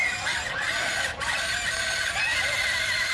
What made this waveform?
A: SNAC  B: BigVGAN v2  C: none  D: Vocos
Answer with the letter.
C